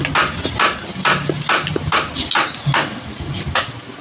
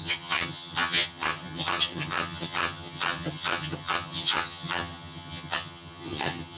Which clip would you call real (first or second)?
first